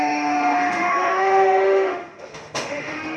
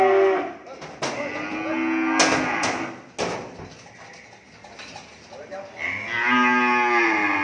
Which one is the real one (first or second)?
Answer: second